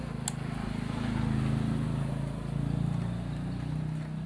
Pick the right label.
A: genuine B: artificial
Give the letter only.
A